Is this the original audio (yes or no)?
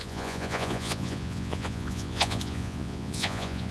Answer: no